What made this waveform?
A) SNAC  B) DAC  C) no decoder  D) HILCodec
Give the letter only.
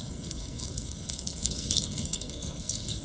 A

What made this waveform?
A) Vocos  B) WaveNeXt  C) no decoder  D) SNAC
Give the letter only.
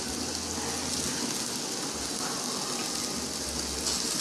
C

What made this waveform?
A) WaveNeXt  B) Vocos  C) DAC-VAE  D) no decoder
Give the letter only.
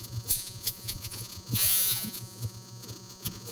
B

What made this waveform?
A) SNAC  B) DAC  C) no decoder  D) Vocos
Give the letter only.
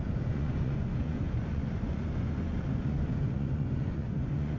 D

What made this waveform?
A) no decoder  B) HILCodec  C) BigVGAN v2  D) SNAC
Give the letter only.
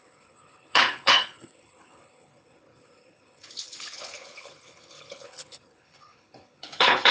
B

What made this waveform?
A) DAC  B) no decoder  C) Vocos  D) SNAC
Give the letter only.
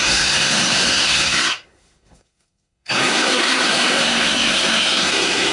D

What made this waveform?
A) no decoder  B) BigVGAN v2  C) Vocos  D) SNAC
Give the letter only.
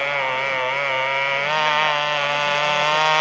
A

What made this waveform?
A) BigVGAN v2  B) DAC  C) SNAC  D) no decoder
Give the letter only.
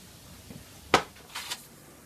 D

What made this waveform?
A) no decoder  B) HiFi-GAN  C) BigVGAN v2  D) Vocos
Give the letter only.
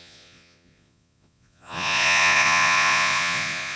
D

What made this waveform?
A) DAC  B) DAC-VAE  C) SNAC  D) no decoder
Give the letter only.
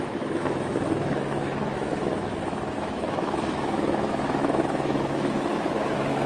B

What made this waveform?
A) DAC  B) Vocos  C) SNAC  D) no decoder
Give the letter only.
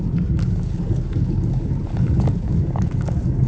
A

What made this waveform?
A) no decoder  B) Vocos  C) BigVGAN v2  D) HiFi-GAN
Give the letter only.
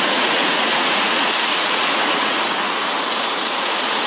B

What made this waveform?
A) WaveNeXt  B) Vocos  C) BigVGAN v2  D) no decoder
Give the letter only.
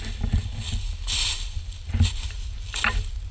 D